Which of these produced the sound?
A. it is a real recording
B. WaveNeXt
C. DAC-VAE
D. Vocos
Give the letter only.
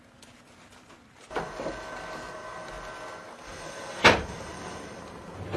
A